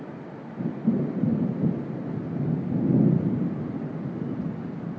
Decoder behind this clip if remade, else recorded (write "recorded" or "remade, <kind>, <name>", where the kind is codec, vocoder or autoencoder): recorded